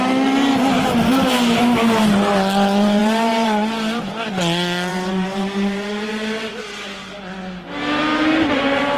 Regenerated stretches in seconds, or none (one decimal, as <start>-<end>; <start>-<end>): 3.0-4.0; 4.9-6.1; 8.1-9.0